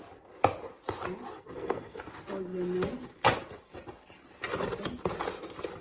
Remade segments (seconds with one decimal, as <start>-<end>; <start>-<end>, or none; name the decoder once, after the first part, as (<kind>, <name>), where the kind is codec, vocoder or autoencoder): 1.3-2.0 (codec, SNAC)